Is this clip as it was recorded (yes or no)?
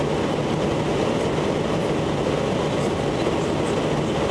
yes